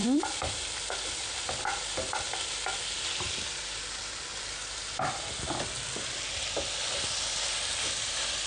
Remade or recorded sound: remade